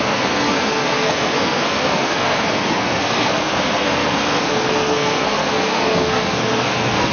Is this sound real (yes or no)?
no